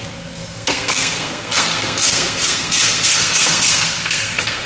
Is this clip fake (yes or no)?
yes